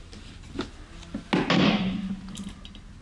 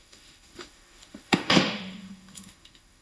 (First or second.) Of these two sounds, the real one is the first